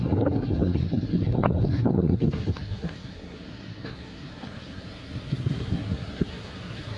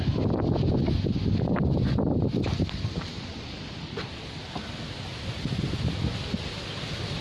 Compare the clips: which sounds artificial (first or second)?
first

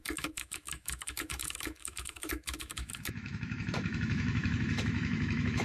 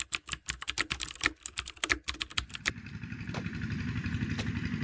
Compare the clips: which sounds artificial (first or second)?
first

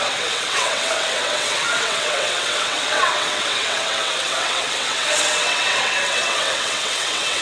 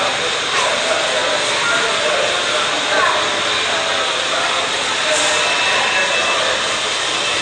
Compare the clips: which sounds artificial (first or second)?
first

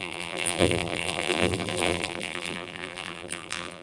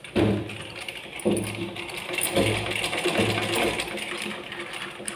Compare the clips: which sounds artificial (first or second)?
first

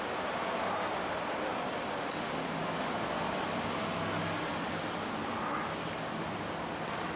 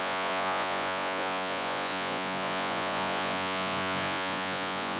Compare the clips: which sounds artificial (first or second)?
second